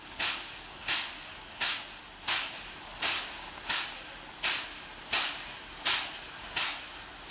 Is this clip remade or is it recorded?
recorded